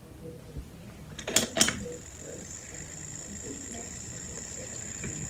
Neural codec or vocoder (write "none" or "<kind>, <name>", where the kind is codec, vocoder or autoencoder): none